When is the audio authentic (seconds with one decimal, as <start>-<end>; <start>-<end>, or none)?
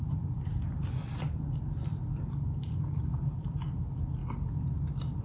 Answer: 0.0-5.2